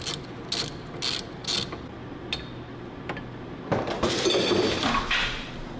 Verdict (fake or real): real